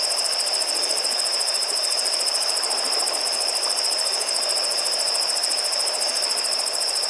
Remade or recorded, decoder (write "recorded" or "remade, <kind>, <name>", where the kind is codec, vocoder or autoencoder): remade, vocoder, BigVGAN v2